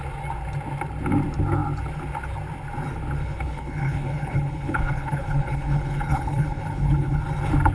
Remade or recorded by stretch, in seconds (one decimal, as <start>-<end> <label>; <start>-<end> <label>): 0.0-3.2 recorded; 3.2-7.2 remade; 7.2-7.7 recorded